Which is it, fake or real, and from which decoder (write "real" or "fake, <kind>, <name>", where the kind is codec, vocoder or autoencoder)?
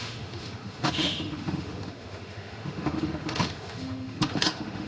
fake, autoencoder, DAC-VAE